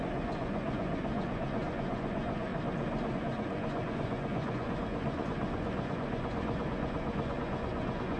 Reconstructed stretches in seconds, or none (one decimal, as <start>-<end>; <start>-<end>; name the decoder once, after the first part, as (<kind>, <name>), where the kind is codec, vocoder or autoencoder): 0.0-2.5 (vocoder, Vocos); 3.1-8.2